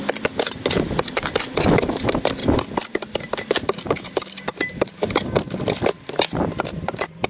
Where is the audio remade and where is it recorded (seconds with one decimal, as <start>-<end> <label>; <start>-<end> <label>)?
0.0-7.3 recorded